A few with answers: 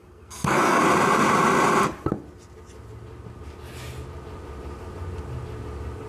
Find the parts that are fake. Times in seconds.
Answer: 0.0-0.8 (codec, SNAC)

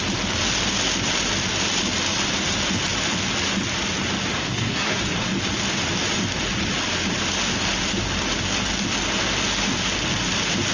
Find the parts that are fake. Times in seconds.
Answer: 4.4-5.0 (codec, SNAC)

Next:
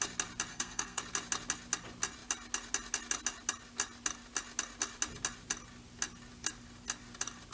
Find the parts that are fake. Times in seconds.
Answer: 0.5-1.0 (codec, SNAC)